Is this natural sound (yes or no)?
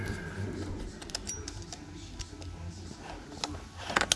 yes